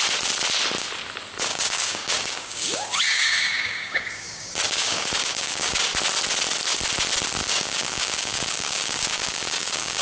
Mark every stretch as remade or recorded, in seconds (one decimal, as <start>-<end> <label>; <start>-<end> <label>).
0.0-1.5 recorded; 1.5-5.8 remade; 5.8-7.4 recorded; 7.4-10.0 remade